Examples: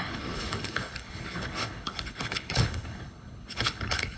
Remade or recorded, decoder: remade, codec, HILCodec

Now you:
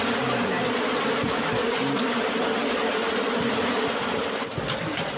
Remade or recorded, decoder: recorded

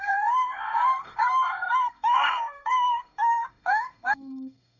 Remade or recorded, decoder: remade, codec, SNAC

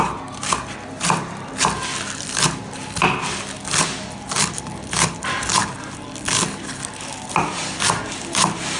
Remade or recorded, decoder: recorded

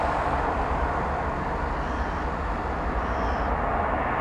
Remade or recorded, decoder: recorded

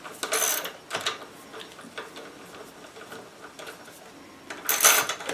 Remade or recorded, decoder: recorded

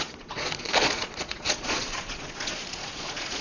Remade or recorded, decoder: remade, vocoder, Vocos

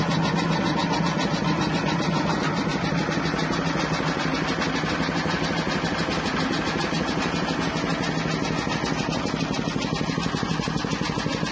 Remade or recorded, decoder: recorded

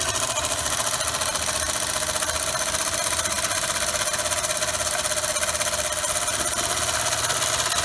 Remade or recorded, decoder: recorded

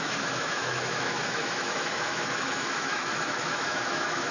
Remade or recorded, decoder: remade, autoencoder, DAC-VAE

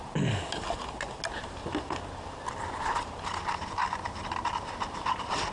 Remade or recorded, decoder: recorded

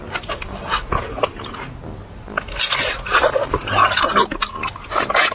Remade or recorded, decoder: recorded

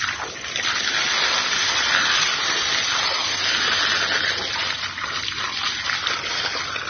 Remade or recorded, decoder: recorded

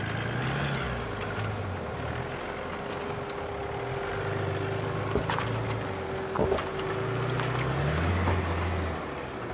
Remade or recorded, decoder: recorded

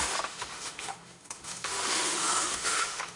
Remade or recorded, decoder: remade, autoencoder, DAC-VAE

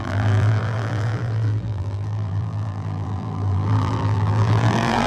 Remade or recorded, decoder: remade, vocoder, BigVGAN v2